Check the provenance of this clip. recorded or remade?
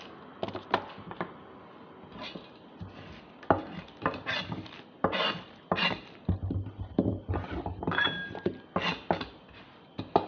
recorded